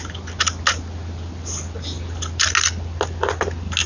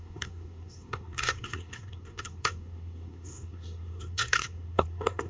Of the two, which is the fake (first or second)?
second